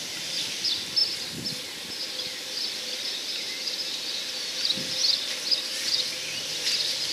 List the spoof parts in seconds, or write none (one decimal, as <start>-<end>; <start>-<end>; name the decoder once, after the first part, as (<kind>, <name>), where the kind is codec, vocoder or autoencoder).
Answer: none